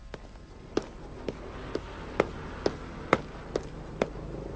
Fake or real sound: real